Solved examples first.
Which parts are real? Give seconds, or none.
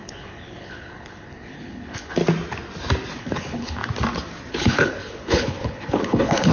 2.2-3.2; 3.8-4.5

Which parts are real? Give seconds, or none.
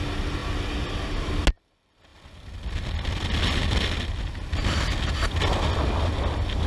0.0-6.7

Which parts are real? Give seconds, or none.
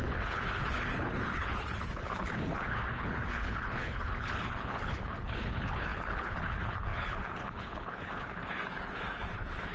none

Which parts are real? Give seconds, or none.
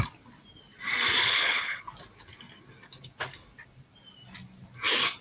0.0-1.2; 1.8-5.2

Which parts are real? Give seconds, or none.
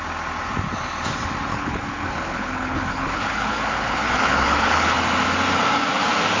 0.0-1.5; 5.0-6.4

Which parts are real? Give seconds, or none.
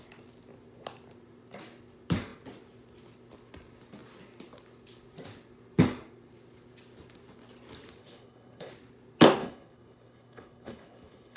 0.0-8.0; 8.7-9.4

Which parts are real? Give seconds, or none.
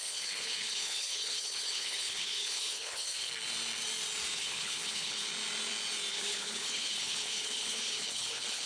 3.3-4.4; 5.3-6.1